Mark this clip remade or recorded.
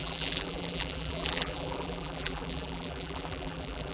remade